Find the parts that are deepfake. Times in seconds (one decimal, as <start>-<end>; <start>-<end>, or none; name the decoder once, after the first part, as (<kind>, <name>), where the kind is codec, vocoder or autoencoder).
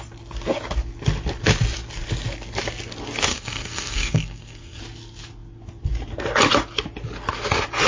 3.3-4.8 (codec, SNAC)